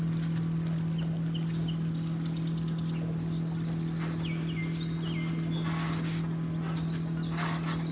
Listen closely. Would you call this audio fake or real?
real